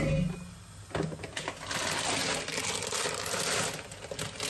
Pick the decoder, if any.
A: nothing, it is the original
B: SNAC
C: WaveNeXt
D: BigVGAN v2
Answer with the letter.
A